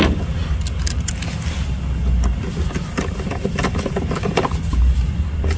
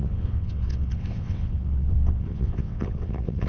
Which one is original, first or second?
first